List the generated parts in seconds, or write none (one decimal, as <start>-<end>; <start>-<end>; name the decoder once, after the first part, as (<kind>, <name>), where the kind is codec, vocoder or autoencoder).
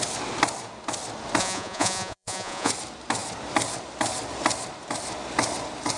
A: 1.4-2.7 (vocoder, Vocos)